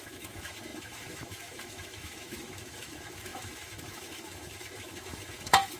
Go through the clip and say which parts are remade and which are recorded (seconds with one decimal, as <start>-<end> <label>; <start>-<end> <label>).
0.0-5.8 remade